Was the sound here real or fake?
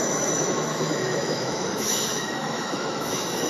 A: fake